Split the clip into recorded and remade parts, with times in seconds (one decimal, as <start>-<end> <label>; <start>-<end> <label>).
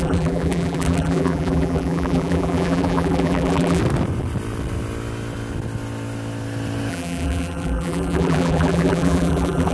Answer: 0.0-3.8 remade; 3.8-6.9 recorded; 6.9-9.7 remade